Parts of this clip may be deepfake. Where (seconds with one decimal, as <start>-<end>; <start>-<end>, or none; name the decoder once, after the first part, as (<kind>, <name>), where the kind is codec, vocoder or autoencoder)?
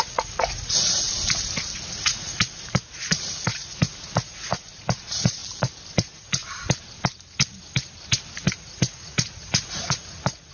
0.0-1.1 (vocoder, Vocos); 1.9-5.4; 5.9-6.4; 8.4-10.5